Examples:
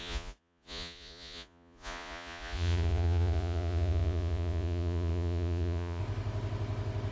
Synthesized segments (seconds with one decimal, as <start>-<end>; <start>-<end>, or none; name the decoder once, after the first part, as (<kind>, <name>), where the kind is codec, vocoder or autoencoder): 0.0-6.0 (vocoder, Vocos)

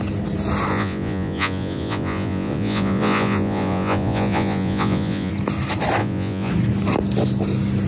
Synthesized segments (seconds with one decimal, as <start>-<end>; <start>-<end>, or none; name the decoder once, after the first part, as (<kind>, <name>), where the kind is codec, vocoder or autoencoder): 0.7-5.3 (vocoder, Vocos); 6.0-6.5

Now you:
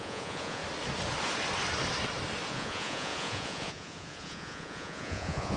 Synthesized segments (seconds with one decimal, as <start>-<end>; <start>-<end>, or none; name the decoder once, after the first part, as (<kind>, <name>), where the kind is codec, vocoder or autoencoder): 0.0-0.6 (vocoder, Vocos); 2.5-5.6

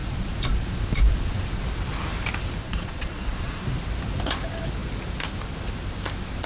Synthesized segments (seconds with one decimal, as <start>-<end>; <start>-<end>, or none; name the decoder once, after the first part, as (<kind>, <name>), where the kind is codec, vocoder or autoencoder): 2.6-3.6 (vocoder, Vocos)

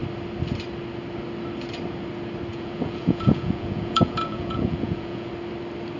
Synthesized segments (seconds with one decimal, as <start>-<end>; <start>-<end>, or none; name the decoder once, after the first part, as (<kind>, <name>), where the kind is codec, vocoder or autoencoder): 2.5-5.3 (vocoder, Vocos)

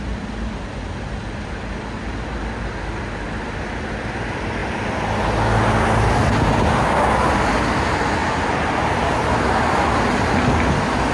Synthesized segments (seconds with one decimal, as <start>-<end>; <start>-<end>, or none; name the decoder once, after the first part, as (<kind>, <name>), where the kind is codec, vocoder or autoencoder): none

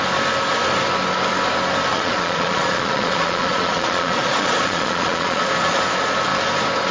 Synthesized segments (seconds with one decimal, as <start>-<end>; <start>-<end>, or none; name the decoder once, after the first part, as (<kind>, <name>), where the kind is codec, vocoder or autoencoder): 1.9-5.8 (vocoder, Vocos)

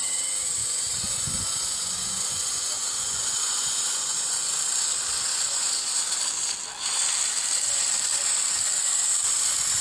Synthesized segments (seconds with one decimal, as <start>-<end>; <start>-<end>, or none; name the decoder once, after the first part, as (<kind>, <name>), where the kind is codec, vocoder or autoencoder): 0.6-4.5 (vocoder, Vocos); 5.3-5.9